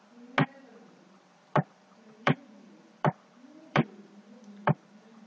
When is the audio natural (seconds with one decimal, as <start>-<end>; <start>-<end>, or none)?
0.0-0.7; 3.9-4.6